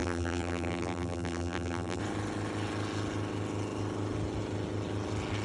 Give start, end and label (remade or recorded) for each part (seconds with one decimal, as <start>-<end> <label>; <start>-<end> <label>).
0.0-2.0 remade; 2.0-5.4 recorded